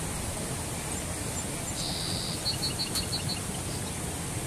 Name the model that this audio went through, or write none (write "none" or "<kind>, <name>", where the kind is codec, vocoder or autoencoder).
none